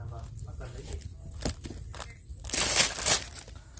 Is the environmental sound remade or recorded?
recorded